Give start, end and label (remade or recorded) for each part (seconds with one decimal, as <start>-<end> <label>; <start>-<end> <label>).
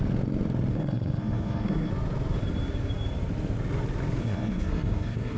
0.0-0.7 recorded; 0.7-1.9 remade; 1.9-4.2 recorded; 4.2-5.4 remade